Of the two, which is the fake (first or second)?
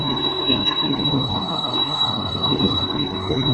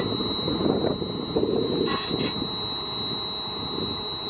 first